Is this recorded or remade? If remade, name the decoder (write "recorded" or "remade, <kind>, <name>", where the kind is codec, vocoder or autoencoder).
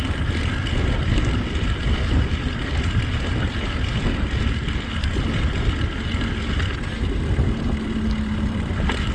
recorded